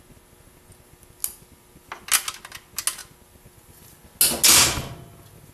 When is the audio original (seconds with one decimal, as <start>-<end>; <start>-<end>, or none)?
0.0-5.5